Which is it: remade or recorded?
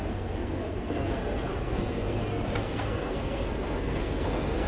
remade